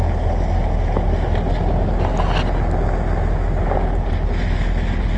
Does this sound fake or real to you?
real